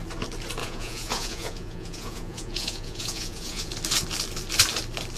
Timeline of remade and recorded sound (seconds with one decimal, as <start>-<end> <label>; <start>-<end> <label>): 0.0-0.6 recorded; 0.6-3.7 remade; 3.7-5.2 recorded